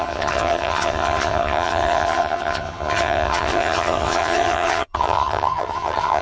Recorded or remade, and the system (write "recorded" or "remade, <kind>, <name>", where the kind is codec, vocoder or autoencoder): remade, vocoder, HiFi-GAN